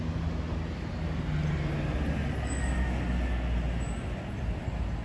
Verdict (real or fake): real